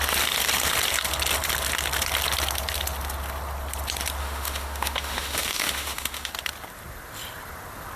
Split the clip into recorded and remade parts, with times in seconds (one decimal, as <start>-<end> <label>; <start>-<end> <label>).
0.0-4.2 recorded; 4.2-6.3 remade; 6.3-8.0 recorded